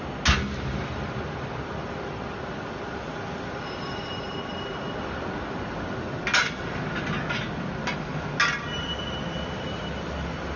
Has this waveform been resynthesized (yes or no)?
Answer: no